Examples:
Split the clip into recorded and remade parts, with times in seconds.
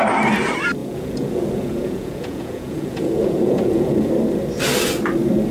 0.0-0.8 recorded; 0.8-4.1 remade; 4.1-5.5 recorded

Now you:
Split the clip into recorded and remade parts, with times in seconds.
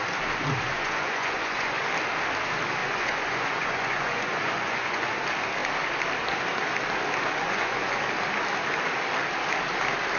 0.0-0.7 recorded; 0.7-1.8 remade; 1.8-2.8 recorded; 2.8-5.1 remade; 5.1-7.4 recorded; 7.4-8.0 remade; 8.0-10.2 recorded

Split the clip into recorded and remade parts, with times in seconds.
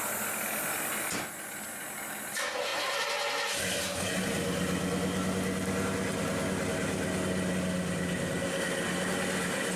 0.0-9.8 recorded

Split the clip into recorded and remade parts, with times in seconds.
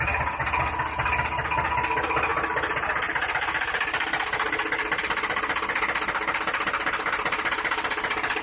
0.0-8.4 recorded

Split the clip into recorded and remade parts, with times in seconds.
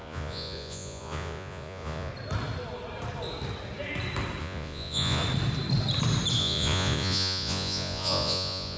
0.0-2.1 remade; 2.1-4.4 recorded; 4.4-5.2 remade; 5.2-6.4 recorded; 6.4-8.8 remade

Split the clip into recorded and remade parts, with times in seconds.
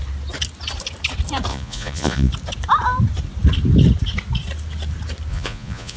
0.0-1.5 recorded; 1.5-2.3 remade; 2.3-5.3 recorded; 5.3-6.0 remade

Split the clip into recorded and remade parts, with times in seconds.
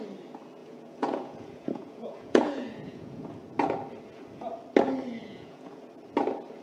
0.0-0.6 recorded; 0.6-3.3 remade; 3.3-5.2 recorded; 5.2-5.8 remade; 5.8-6.6 recorded